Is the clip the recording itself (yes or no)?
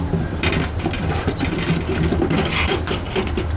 yes